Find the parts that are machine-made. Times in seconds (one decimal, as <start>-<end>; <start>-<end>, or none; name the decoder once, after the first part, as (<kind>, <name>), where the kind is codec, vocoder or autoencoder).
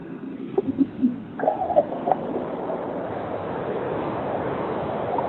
0.0-2.2 (codec, SNAC)